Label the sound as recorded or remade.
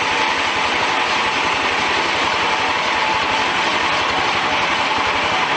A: recorded